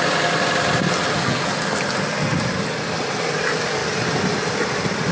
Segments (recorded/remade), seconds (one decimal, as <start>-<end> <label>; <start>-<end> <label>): 0.0-5.1 recorded